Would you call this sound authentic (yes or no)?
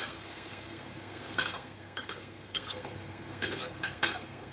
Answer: no